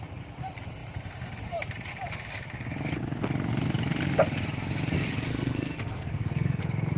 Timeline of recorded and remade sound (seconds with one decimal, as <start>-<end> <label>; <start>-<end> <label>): 0.0-5.3 recorded; 5.3-6.6 remade; 6.6-7.0 recorded